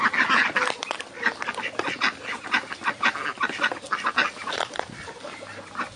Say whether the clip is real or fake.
real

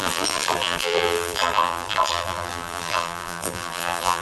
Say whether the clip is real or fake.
fake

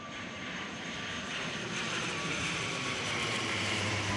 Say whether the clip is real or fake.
fake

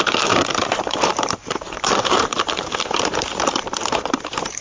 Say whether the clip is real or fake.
fake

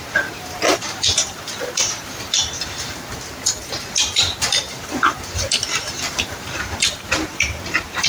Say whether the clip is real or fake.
fake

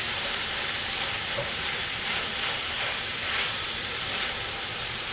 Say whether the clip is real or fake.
fake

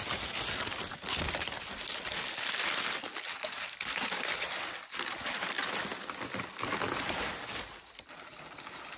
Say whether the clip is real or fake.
real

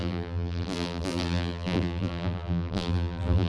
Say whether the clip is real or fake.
fake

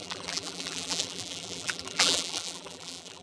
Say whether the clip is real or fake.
fake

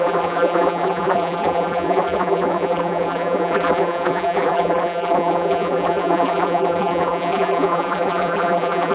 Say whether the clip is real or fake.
fake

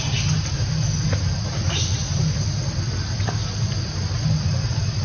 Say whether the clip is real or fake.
real